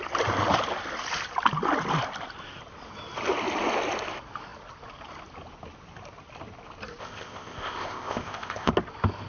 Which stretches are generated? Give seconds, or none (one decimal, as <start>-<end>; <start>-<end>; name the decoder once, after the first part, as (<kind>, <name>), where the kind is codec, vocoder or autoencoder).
7.0-8.7 (codec, ZipCodec)

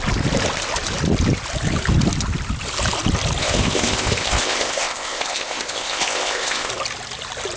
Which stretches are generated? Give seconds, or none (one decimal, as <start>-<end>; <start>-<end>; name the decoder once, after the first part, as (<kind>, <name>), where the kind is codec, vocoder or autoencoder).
3.4-6.7 (codec, ZipCodec)

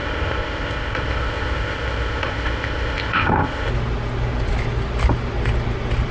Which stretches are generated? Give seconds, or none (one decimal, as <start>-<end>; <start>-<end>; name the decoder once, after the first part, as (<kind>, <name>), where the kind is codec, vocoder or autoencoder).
0.0-3.7 (codec, ZipCodec)

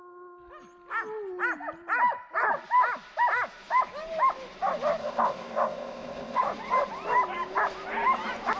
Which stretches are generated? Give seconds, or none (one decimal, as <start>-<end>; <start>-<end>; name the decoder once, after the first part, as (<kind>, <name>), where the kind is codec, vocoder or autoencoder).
5.0-6.4 (codec, ZipCodec)